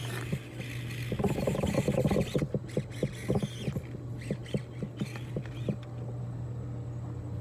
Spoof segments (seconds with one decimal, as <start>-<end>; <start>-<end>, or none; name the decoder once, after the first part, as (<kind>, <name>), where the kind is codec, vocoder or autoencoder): none